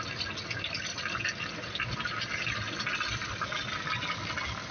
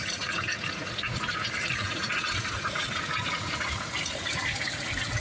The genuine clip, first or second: first